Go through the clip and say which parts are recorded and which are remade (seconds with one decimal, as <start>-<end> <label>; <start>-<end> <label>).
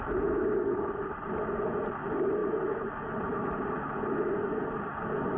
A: 0.0-5.4 recorded